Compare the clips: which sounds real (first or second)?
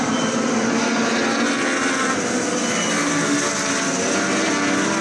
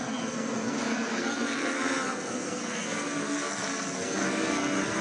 first